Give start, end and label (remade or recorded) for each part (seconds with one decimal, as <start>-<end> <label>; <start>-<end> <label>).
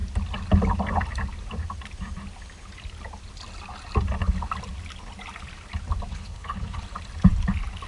0.0-6.1 recorded; 6.1-6.8 remade; 6.8-7.9 recorded